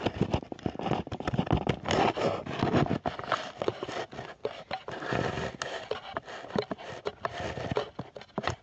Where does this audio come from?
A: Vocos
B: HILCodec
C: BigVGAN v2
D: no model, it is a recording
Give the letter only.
D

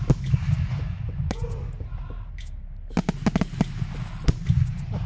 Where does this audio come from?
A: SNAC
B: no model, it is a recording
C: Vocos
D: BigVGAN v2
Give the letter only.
B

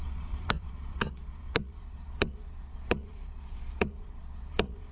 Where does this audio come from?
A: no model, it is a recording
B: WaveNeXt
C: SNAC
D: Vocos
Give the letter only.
D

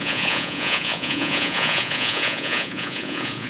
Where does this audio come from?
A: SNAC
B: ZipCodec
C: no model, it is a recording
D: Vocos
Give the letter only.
D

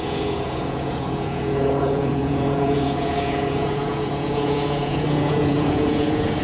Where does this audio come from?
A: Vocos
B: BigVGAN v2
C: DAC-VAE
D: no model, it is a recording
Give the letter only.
A